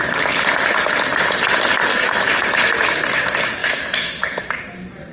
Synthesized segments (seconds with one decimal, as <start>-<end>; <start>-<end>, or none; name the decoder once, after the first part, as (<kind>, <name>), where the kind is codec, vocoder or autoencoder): 1.9-3.0 (autoencoder, DAC-VAE); 3.6-4.6